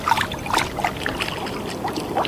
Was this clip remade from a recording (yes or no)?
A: no